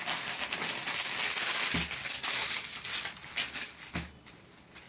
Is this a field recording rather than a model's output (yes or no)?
yes